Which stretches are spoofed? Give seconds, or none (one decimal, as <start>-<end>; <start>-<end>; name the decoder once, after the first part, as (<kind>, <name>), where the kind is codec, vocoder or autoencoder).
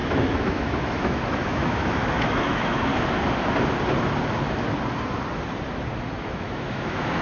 0.0-2.9 (autoencoder, DAC-VAE); 6.2-7.2